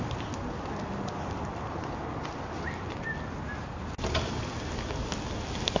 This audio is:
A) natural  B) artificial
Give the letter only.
A